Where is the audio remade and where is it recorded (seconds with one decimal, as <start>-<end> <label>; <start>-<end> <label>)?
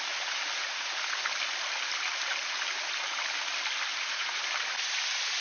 0.0-0.6 recorded; 0.6-1.2 remade; 1.2-3.9 recorded; 3.9-4.4 remade; 4.4-5.4 recorded